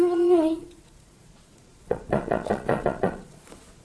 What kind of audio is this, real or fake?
fake